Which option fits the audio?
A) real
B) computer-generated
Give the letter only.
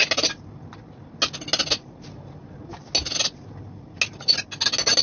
A